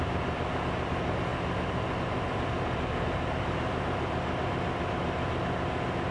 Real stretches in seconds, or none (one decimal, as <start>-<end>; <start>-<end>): 0.0-6.1